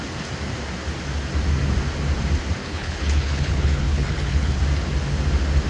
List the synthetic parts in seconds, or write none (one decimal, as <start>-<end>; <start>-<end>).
2.6-4.6